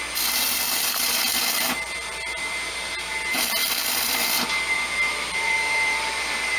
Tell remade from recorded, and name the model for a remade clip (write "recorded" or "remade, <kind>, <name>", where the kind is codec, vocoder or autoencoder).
remade, vocoder, BigVGAN v2